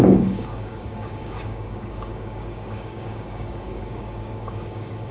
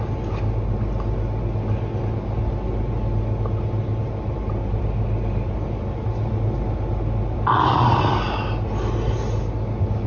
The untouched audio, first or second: second